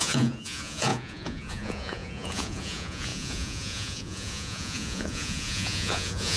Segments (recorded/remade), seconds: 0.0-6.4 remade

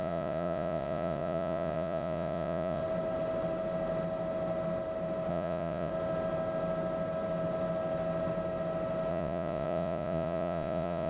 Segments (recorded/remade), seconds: 0.0-2.8 remade; 2.8-5.3 recorded; 5.3-5.9 remade; 5.9-9.1 recorded; 9.1-11.1 remade